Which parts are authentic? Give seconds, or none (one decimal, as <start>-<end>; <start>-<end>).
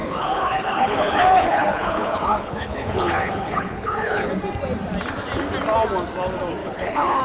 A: 4.3-6.6